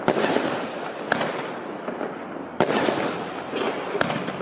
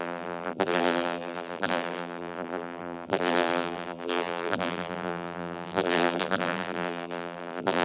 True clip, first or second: first